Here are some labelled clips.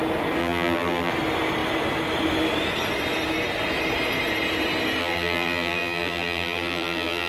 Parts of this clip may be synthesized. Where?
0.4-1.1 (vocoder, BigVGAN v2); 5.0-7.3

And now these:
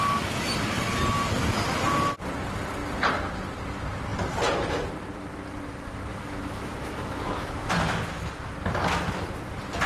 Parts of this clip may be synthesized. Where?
6.1-7.7 (autoencoder, DAC-VAE)